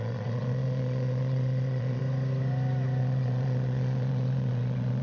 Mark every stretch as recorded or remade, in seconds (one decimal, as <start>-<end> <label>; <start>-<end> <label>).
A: 0.0-2.0 remade; 2.0-3.0 recorded; 3.0-5.0 remade